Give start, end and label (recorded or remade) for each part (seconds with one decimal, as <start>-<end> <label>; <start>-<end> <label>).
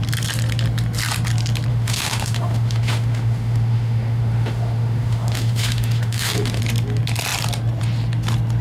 0.0-1.7 recorded; 1.7-6.6 remade; 6.6-8.6 recorded